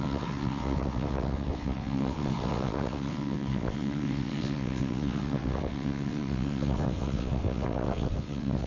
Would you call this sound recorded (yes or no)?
no